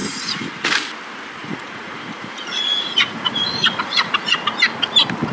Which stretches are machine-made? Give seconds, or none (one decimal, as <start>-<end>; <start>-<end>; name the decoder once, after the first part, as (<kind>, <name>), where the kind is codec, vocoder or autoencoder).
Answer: 0.0-0.7 (vocoder, Vocos); 1.4-4.6